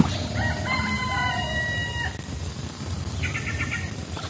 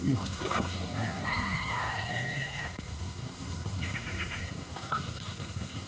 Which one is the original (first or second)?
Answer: first